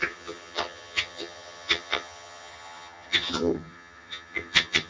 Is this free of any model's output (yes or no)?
no